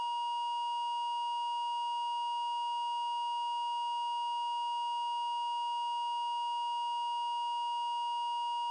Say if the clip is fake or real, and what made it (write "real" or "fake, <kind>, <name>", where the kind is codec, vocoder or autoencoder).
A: real